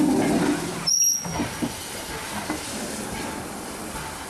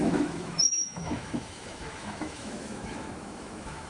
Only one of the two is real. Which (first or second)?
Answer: first